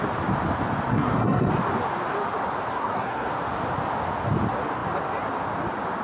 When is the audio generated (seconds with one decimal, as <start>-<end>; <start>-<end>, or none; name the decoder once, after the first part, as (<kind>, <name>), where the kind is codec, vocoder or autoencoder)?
0.9-1.5 (codec, SNAC); 2.7-3.3